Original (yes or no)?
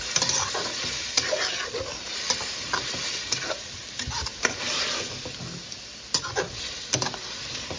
yes